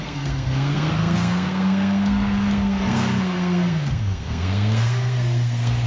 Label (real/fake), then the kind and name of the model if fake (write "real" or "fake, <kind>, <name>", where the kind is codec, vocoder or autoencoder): fake, codec, SNAC